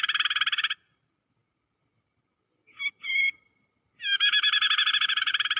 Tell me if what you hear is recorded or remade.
recorded